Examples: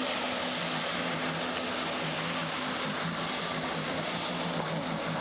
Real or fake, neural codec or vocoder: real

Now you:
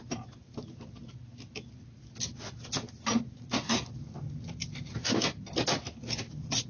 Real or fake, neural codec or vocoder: real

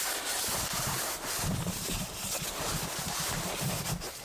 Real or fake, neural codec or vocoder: real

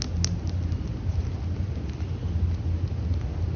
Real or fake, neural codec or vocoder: real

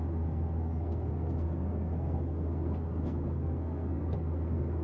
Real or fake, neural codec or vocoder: fake, codec, SNAC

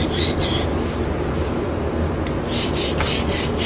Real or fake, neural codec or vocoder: real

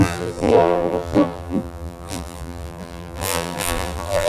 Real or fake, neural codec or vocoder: fake, vocoder, BigVGAN v2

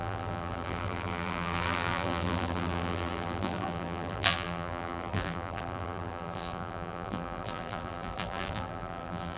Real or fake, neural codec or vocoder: fake, vocoder, BigVGAN v2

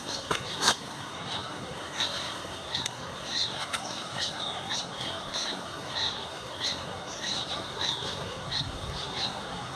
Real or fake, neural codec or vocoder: fake, codec, SNAC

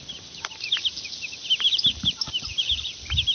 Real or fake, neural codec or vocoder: real